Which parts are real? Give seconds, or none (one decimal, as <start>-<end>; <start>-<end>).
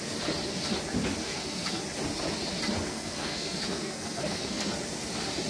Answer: 0.0-1.2; 1.8-2.9; 4.7-5.5